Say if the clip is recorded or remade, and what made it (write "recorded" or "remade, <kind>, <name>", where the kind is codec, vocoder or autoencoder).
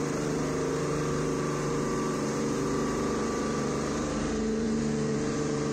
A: remade, vocoder, BigVGAN v2